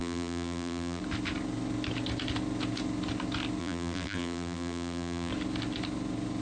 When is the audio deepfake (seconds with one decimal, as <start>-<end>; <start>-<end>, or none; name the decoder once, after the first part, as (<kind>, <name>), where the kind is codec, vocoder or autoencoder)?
0.0-1.0 (vocoder, BigVGAN v2); 3.6-5.3